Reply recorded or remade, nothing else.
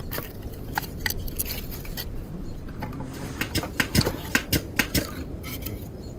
recorded